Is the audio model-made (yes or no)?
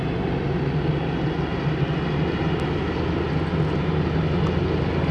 no